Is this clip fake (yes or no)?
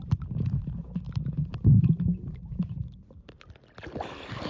no